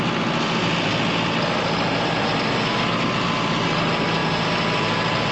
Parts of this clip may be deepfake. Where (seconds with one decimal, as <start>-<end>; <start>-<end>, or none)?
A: none